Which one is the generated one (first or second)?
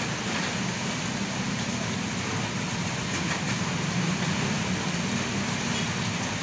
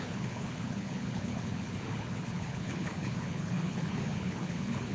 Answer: second